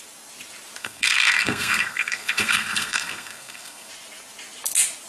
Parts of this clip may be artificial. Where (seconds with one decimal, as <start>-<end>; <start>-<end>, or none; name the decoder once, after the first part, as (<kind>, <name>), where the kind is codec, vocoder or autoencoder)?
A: 0.8-3.9 (codec, SNAC)